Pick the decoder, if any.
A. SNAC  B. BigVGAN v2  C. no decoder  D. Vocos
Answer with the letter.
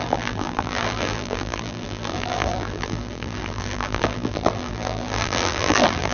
B